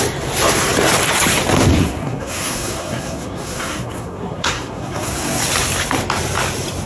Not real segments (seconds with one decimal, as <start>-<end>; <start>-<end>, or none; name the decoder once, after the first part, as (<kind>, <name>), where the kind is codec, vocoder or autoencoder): 1.8-5.4 (codec, SNAC)